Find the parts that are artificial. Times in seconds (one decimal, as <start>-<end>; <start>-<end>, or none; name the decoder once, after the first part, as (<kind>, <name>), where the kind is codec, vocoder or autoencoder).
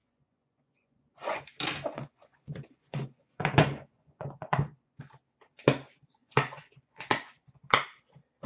0.0-1.4 (vocoder, Vocos); 2.0-5.0; 6.2-7.6